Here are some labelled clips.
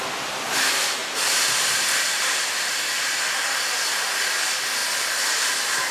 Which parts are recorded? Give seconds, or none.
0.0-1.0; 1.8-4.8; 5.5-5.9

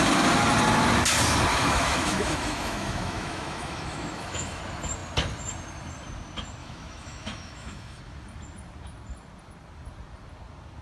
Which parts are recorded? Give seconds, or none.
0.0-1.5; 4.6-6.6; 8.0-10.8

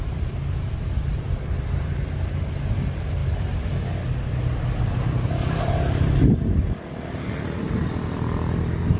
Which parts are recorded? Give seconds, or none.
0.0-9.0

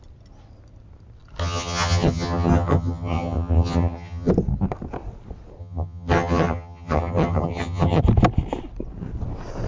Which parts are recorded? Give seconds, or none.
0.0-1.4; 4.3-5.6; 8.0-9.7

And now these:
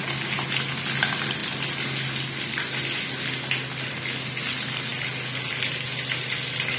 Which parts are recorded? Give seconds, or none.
0.0-6.8